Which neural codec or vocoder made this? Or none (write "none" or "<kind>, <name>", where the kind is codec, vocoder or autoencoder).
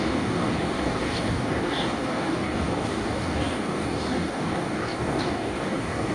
codec, DAC